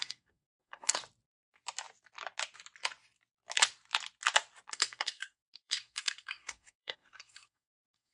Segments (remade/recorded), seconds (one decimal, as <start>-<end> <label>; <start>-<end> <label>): 0.0-1.0 remade; 1.0-4.7 recorded; 4.7-8.1 remade